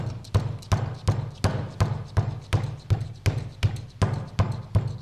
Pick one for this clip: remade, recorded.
recorded